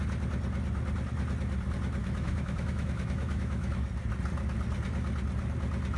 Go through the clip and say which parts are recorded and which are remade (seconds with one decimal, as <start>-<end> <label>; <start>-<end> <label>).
0.0-2.0 recorded; 2.0-3.9 remade; 3.9-6.0 recorded